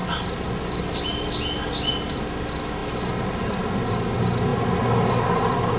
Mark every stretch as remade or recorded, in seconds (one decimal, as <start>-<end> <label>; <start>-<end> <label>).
0.0-5.8 recorded

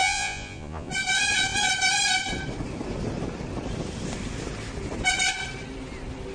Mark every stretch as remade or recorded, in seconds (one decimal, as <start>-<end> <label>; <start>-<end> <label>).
0.0-0.9 remade; 0.9-6.3 recorded

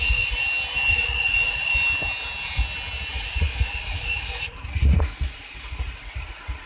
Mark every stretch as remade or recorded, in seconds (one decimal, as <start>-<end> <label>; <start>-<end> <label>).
0.0-0.4 remade; 0.4-0.9 recorded; 0.9-1.7 remade; 1.7-3.1 recorded; 3.1-6.7 remade

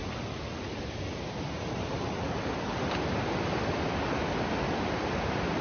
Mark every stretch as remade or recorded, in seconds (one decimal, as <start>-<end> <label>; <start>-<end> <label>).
0.0-5.6 recorded